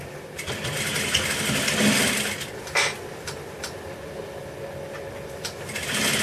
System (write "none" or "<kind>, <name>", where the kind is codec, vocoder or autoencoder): none